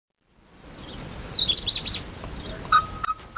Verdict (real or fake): real